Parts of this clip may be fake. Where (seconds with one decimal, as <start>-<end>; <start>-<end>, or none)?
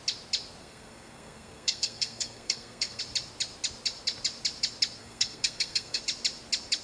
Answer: 0.6-3.0; 5.0-6.0